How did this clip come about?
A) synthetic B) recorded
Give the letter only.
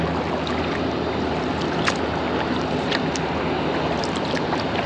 B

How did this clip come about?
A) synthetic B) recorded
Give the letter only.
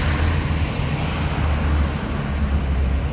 B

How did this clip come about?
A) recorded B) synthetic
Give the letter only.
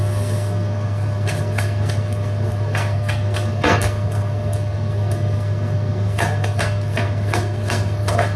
B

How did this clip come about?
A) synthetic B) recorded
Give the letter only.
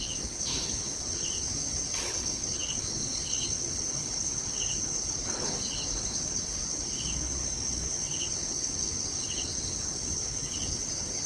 A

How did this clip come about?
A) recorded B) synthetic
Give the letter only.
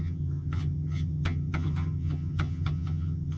B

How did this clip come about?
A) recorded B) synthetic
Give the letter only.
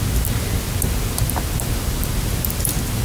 A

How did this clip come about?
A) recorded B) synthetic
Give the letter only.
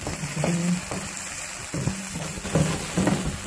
A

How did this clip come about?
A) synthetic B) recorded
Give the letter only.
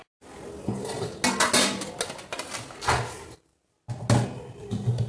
B